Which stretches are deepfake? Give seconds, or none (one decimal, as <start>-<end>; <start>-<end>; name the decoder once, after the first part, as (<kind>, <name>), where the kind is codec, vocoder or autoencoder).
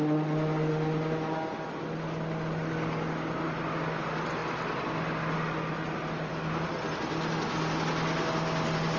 none